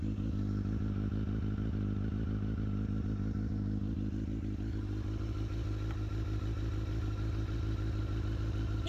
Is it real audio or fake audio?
real